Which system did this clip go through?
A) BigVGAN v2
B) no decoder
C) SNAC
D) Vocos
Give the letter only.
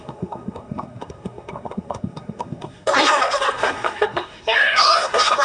C